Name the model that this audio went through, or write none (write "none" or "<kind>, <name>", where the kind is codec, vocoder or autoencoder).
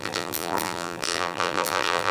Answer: vocoder, BigVGAN v2